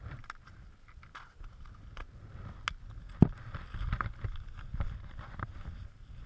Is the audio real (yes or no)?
yes